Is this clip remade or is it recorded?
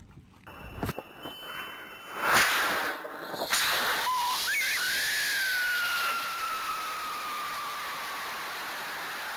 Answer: recorded